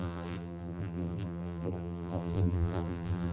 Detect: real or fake fake